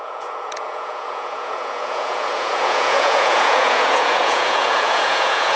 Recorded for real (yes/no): no